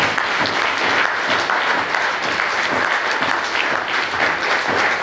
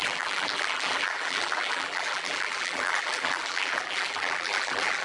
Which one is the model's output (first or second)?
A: second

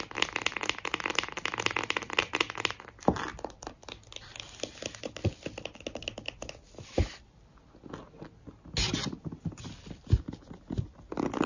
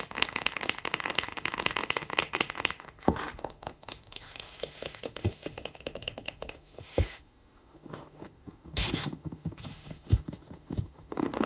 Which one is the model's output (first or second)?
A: second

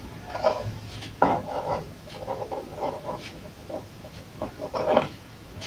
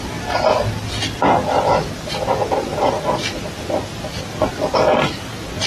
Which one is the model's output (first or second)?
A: first